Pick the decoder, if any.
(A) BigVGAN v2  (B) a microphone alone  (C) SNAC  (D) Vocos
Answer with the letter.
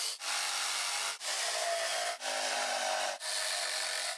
B